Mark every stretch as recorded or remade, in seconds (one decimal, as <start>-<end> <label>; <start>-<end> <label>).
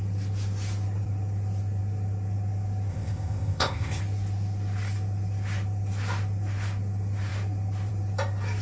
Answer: 0.0-2.9 recorded; 2.9-4.0 remade; 4.0-8.6 recorded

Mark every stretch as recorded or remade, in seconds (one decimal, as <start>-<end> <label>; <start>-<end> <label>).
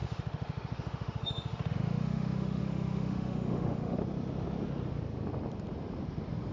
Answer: 0.0-4.0 remade; 4.0-6.5 recorded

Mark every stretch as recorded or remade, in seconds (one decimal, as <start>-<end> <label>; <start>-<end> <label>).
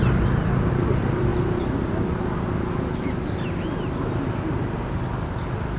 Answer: 0.0-5.8 recorded